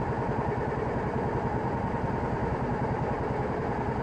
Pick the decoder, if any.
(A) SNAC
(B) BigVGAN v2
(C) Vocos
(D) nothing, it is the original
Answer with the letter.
D